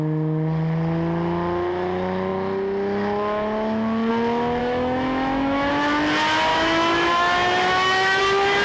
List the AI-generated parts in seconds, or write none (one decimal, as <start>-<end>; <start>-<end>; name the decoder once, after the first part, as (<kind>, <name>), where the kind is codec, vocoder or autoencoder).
4.6-5.7 (autoencoder, DAC-VAE); 6.5-8.2